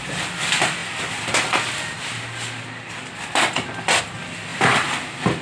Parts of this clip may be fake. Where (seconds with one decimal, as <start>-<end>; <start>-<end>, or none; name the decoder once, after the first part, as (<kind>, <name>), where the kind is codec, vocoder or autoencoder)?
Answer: 4.5-5.0 (vocoder, BigVGAN v2)